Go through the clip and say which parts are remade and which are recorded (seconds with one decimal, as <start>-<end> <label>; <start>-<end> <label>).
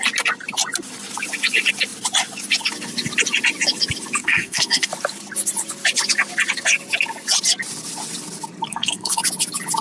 0.0-4.2 recorded; 4.2-4.9 remade; 4.9-8.7 recorded; 8.7-9.2 remade; 9.2-9.8 recorded